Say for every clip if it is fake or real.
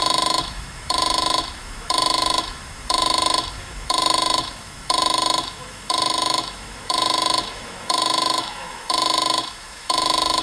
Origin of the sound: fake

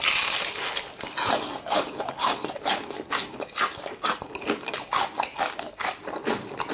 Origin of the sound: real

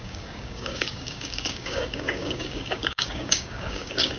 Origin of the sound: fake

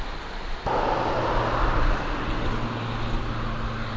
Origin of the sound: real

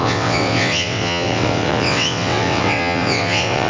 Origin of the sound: fake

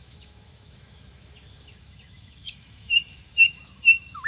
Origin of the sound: fake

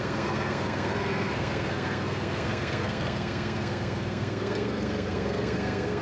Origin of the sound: fake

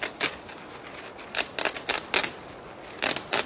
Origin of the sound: real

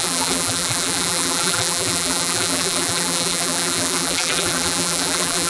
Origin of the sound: fake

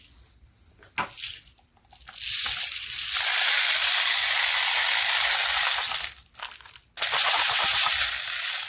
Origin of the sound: real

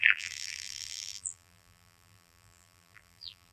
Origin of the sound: fake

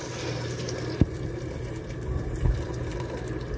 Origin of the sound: real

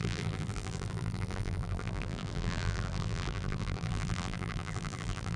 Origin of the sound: fake